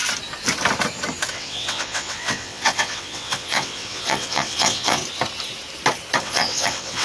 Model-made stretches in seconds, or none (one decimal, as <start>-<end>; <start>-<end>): 1.3-5.0; 6.2-7.0